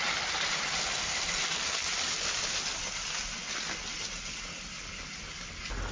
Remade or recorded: recorded